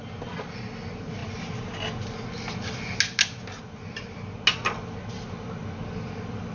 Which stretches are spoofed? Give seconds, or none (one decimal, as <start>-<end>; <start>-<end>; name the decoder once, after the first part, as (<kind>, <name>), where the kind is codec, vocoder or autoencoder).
none